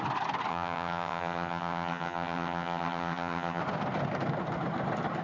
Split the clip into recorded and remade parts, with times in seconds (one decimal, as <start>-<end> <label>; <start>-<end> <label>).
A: 0.0-0.5 recorded; 0.5-3.6 remade; 3.6-5.2 recorded